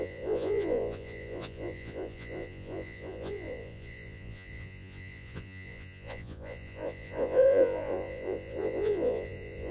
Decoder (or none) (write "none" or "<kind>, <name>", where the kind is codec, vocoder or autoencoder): vocoder, Vocos